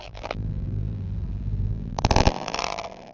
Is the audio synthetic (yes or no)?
yes